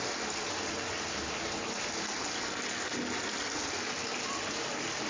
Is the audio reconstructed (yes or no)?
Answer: no